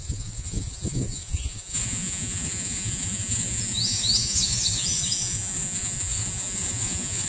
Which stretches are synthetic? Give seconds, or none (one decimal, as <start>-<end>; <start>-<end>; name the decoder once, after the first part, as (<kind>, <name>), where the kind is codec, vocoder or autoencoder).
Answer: 0.0-7.3 (vocoder, Vocos)